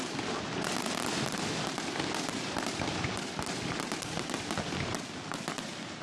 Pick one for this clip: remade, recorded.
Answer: recorded